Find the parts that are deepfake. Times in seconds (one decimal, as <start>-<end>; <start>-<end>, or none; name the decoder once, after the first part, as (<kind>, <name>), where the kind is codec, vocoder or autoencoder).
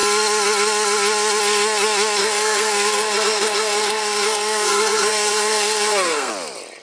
2.2-6.3 (codec, SNAC)